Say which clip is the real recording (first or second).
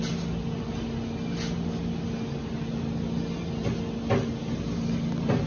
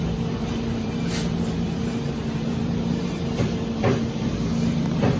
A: first